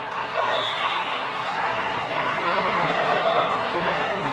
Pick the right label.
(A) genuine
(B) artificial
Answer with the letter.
B